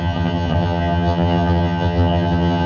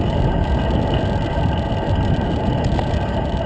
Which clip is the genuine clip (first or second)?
second